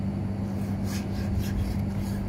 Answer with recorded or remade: recorded